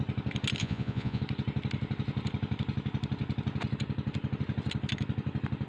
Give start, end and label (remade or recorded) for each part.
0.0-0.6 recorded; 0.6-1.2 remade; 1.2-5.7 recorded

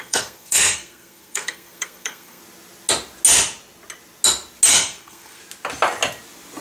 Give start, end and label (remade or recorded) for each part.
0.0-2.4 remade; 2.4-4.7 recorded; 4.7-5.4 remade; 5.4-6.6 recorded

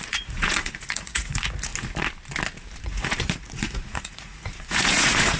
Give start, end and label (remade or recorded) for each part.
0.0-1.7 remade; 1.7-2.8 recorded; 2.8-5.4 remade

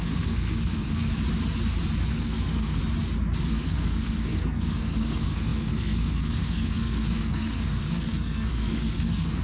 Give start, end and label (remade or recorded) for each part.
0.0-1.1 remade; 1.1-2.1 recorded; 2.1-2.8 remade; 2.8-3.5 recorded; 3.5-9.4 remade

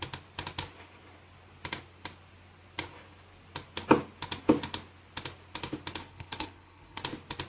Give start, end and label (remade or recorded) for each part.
0.0-6.0 recorded; 6.0-7.0 remade; 7.0-7.5 recorded

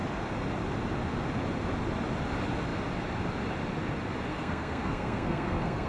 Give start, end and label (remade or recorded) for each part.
0.0-4.3 recorded; 4.3-5.9 remade

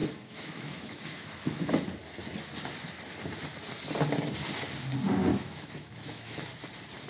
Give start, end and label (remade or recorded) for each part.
0.0-1.7 remade; 1.7-5.3 recorded; 5.3-6.4 remade; 6.4-7.1 recorded